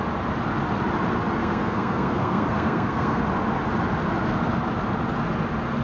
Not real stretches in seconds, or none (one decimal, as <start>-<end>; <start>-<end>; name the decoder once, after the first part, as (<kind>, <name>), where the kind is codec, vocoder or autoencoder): 1.4-3.2 (codec, SNAC)